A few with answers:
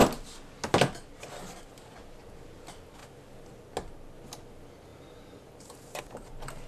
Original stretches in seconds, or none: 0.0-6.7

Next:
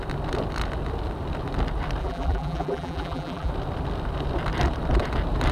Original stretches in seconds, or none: 0.0-2.0; 3.5-5.5

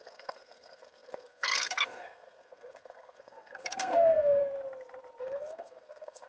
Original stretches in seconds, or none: 4.4-5.2

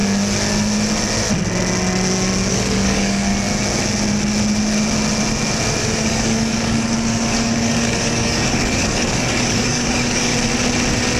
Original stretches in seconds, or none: 0.0-2.5; 3.3-5.8; 10.3-11.2

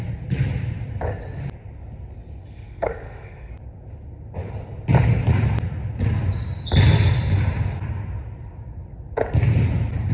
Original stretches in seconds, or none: 0.0-2.4; 3.5-10.1